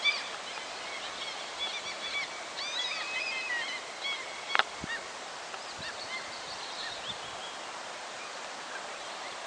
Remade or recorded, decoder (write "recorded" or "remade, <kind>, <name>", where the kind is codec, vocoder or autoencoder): recorded